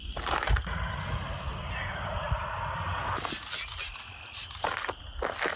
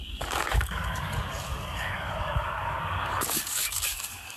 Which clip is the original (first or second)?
first